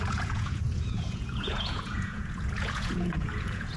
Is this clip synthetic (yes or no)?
yes